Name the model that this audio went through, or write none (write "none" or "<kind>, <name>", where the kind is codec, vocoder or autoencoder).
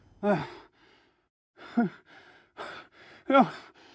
none